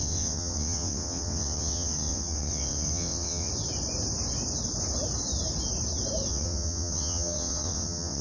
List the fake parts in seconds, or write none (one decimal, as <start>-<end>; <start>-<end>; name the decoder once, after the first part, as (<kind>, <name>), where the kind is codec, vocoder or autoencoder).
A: 0.0-3.5 (vocoder, WaveNeXt); 6.3-8.2